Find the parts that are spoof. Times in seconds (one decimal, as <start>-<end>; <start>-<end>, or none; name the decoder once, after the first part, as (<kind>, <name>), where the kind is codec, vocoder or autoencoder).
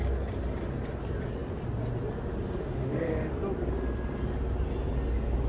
2.6-3.3 (autoencoder, DAC-VAE)